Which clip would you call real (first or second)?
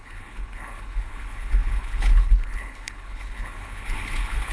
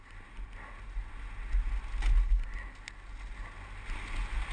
second